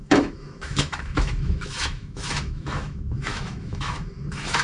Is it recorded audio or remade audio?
remade